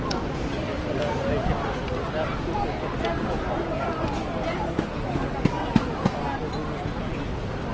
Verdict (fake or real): real